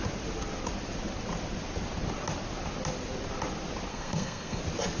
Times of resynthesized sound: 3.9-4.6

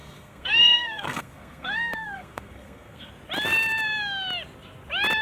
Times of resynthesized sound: 0.0-3.1

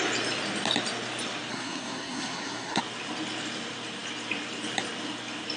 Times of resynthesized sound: 1.5-2.8

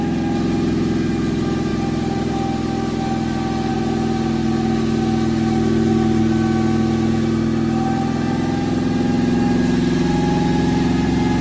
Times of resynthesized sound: none

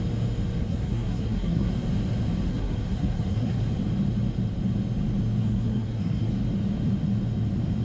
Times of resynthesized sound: 0.6-1.7; 2.5-3.6; 5.4-6.3

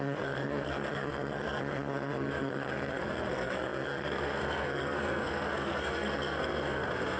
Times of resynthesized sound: 0.0-7.2

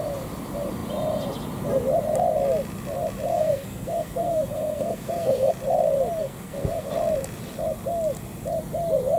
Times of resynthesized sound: 3.3-5.5; 6.2-6.9

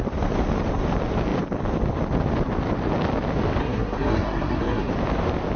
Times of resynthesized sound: 3.6-4.9